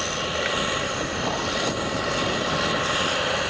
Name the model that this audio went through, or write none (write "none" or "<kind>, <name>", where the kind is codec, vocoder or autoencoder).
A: none